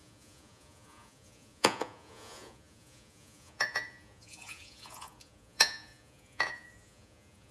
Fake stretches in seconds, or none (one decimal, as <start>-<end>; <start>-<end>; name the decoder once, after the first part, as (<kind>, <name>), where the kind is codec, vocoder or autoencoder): 0.0-7.5 (vocoder, Vocos)